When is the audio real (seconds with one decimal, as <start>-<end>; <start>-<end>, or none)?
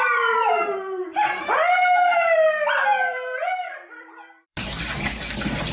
none